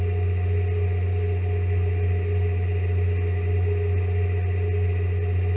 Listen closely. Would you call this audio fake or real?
real